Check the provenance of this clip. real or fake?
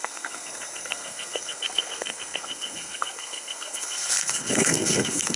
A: fake